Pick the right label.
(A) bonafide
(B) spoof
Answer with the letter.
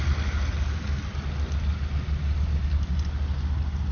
A